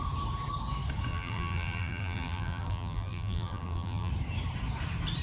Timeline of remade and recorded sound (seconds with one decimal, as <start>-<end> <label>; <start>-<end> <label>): 0.0-1.1 recorded; 1.1-4.1 remade; 4.1-5.2 recorded